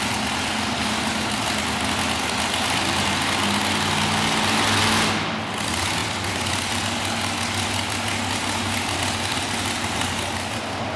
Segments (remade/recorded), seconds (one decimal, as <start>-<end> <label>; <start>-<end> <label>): 0.0-11.0 recorded